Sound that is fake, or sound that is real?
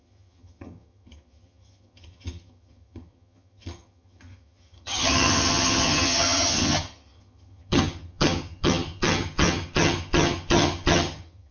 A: fake